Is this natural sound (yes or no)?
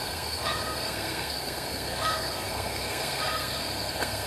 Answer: no